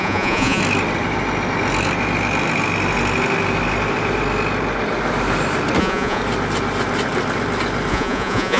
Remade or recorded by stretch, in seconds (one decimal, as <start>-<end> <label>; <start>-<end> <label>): 0.0-0.6 remade; 0.6-5.8 recorded; 5.8-6.2 remade; 6.2-7.9 recorded; 7.9-8.6 remade